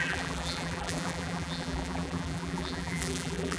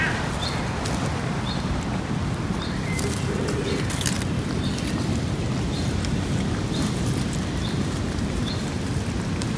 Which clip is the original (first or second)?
second